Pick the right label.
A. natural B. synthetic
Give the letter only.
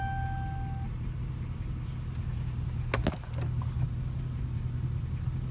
A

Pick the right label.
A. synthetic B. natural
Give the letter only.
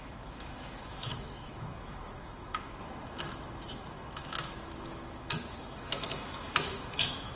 A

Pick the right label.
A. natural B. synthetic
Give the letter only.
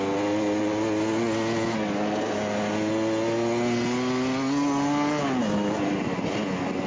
A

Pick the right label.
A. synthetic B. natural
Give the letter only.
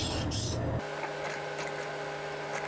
B